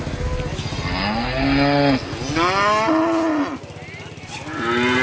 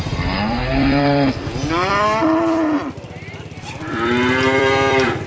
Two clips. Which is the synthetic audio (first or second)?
second